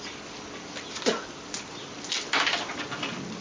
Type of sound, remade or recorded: recorded